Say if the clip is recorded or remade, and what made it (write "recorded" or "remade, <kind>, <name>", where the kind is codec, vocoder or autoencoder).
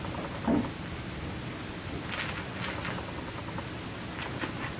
recorded